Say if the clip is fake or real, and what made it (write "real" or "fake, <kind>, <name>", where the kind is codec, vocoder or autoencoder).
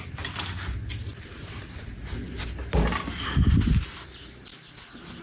real